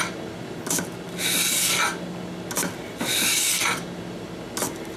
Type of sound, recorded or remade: recorded